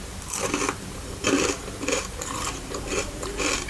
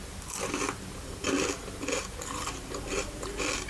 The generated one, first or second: first